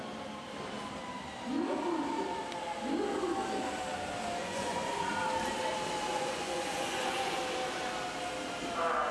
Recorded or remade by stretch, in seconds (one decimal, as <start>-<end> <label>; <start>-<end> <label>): 0.0-4.4 recorded; 4.4-5.1 remade; 5.1-6.1 recorded; 6.1-7.4 remade; 7.4-9.1 recorded